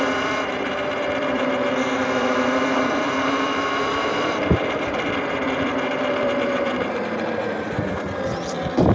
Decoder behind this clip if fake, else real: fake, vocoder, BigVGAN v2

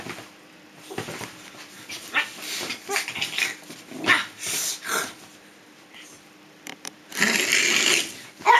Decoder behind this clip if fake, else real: fake, vocoder, BigVGAN v2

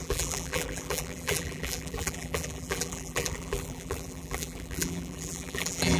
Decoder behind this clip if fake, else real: fake, vocoder, BigVGAN v2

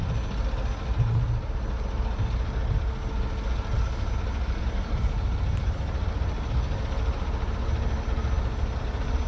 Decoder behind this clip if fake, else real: real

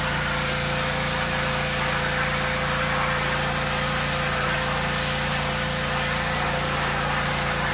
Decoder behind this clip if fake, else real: real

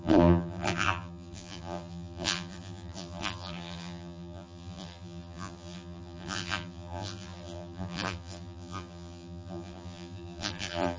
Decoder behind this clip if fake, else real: fake, vocoder, BigVGAN v2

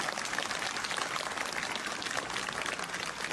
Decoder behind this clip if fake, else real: real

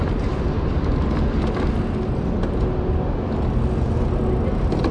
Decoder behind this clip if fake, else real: real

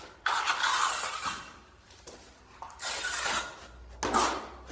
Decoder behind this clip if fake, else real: real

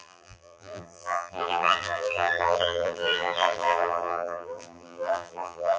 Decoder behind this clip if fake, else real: fake, vocoder, BigVGAN v2